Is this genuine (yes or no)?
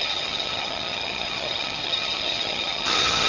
no